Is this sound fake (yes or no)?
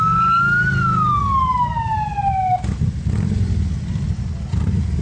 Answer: no